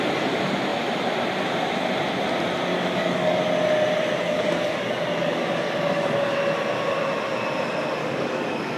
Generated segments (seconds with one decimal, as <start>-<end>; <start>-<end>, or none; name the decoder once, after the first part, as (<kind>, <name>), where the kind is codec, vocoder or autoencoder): 2.7-3.4 (codec, DAC); 4.2-6.4; 8.0-8.8